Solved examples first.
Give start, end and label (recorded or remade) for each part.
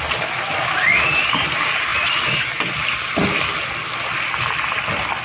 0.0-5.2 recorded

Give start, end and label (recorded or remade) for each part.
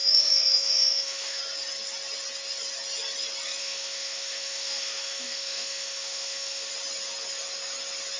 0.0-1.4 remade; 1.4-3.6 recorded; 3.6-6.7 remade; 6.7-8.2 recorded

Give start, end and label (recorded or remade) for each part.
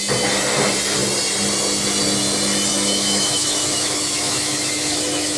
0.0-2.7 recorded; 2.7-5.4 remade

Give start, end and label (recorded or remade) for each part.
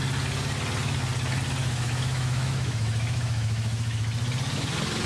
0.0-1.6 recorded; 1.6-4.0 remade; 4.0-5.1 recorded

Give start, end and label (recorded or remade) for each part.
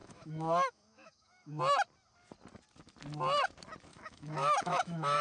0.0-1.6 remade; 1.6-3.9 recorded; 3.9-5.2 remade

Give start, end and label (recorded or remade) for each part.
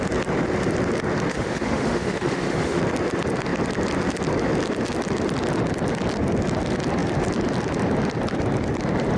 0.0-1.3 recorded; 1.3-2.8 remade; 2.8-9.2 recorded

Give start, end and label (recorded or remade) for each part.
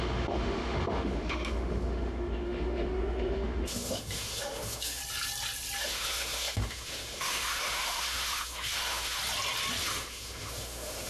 0.0-5.0 remade; 5.0-5.8 recorded; 5.8-9.2 remade; 9.2-9.8 recorded; 9.8-11.1 remade